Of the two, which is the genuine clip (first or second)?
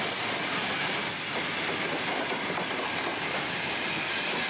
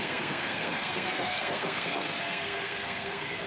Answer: first